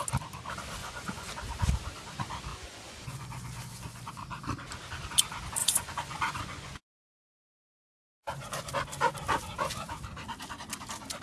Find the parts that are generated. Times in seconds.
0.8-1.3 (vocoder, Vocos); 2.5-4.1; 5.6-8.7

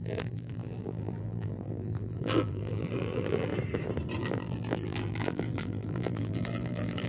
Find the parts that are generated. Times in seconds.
0.0-3.5 (vocoder, BigVGAN v2); 4.2-7.1

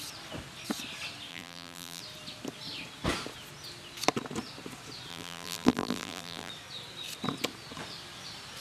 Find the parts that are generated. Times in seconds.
1.3-2.0 (vocoder, BigVGAN v2); 5.1-6.5

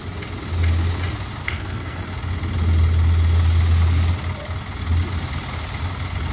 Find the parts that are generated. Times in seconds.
1.4-2.0 (codec, SNAC)

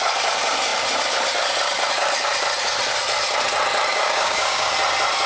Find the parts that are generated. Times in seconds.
3.9-4.7 (codec, DAC)

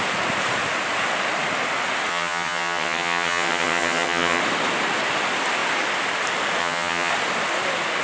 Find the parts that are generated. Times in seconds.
2.1-4.4 (vocoder, HiFi-GAN); 6.6-7.1

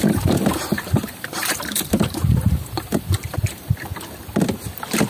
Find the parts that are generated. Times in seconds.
0.0-3.9 (vocoder, BigVGAN v2)

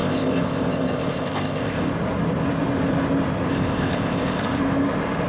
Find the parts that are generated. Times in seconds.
0.0-1.9 (codec, ZipCodec); 3.5-4.6